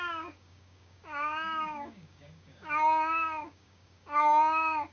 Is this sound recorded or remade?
remade